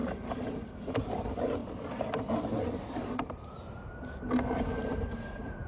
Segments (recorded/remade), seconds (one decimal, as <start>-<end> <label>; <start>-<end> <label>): 0.0-1.6 remade; 1.6-5.0 recorded; 5.0-5.7 remade